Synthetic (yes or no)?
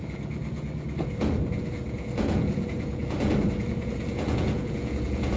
yes